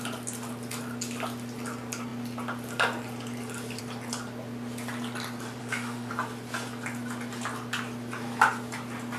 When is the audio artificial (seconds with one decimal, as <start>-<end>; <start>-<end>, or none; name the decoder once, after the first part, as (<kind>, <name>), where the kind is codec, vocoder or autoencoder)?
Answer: 5.6-6.1 (autoencoder, DAC-VAE)